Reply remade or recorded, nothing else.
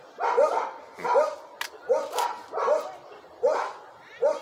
recorded